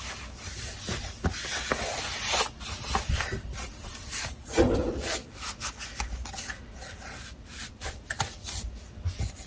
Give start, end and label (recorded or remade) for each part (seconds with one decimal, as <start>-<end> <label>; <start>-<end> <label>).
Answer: 0.0-9.5 recorded